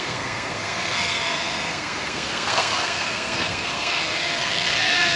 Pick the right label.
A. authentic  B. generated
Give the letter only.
B